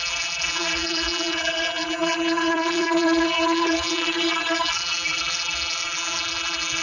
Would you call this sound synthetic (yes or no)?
yes